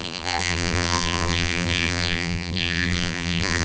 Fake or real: fake